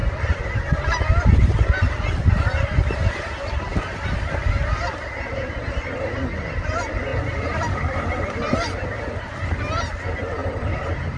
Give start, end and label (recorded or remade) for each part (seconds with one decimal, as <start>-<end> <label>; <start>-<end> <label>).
0.0-3.7 recorded; 3.7-4.5 remade; 4.5-7.1 recorded; 7.1-8.1 remade; 8.1-10.4 recorded; 10.4-11.2 remade